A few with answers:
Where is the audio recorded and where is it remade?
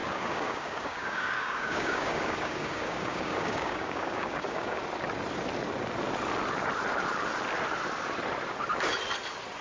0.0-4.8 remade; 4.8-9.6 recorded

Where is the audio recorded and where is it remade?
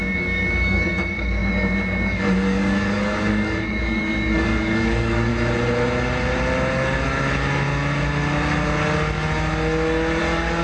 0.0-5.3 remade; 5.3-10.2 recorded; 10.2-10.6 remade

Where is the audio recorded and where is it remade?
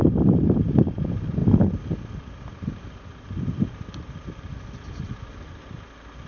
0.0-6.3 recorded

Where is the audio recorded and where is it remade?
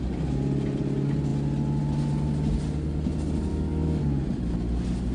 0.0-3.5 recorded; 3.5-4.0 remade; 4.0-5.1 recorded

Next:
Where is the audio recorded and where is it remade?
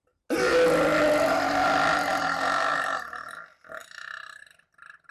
0.0-5.1 recorded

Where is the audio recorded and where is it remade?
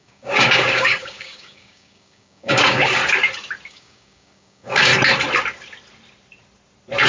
0.0-3.0 remade; 3.0-3.7 recorded; 3.7-4.9 remade; 4.9-7.1 recorded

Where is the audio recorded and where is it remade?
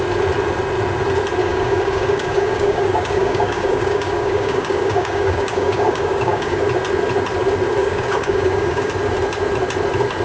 0.0-1.4 recorded; 1.4-6.6 remade; 6.6-7.8 recorded; 7.8-8.9 remade; 8.9-10.2 recorded